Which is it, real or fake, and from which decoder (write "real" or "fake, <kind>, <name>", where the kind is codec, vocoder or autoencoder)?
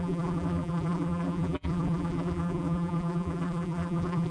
fake, vocoder, BigVGAN v2